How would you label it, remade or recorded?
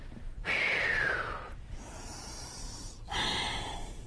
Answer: remade